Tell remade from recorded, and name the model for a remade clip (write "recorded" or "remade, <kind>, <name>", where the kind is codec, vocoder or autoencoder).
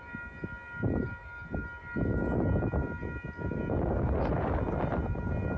recorded